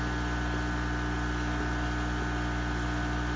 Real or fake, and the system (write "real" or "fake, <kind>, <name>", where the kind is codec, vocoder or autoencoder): real